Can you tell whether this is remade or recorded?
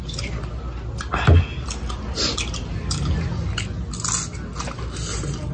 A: recorded